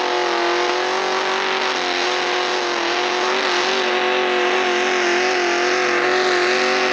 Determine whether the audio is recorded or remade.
recorded